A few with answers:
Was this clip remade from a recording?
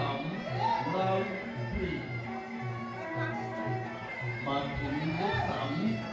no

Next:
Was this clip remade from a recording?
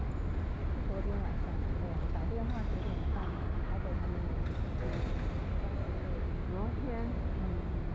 no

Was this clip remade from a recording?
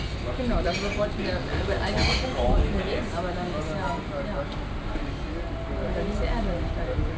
no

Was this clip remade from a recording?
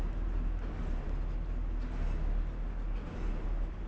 no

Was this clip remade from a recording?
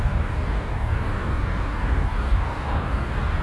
yes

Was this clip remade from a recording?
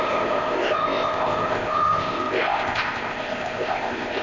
yes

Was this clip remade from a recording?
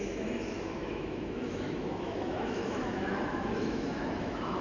yes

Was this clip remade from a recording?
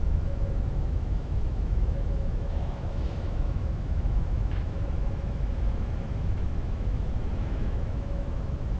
yes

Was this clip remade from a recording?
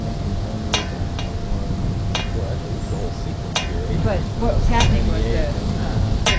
no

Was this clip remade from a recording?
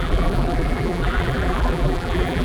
yes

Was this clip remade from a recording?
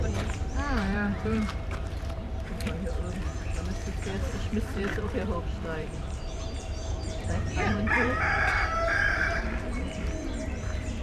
yes